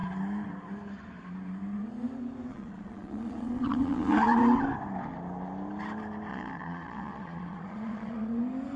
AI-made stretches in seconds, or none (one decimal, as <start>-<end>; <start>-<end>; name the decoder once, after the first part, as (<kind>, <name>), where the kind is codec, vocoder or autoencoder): 2.5-4.4 (vocoder, Vocos); 6.3-8.4